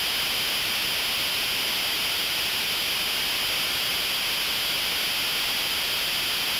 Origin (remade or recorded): recorded